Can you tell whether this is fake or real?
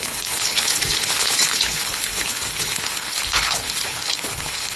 fake